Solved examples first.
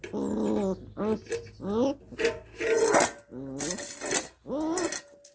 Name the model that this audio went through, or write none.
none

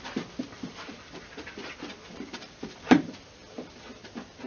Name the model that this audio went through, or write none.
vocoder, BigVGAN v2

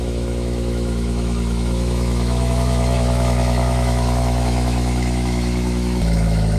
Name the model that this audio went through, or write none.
autoencoder, DAC-VAE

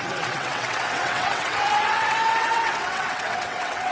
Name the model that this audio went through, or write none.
vocoder, WaveNeXt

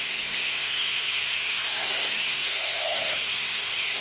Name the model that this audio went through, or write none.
codec, SNAC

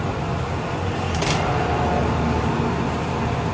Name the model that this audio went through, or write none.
none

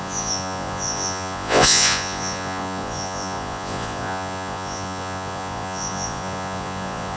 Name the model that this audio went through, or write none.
vocoder, Vocos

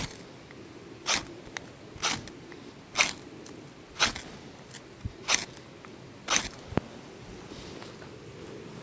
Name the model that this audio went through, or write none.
none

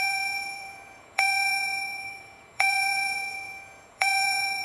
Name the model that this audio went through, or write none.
vocoder, Vocos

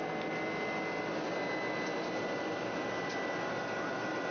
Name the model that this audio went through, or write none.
none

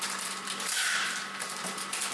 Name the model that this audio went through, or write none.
vocoder, BigVGAN v2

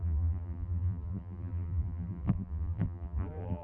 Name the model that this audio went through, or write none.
vocoder, BigVGAN v2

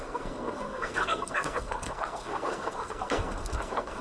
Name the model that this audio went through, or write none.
codec, SNAC